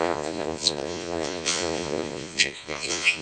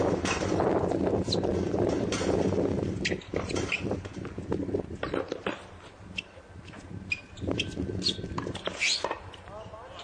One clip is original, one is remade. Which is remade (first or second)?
first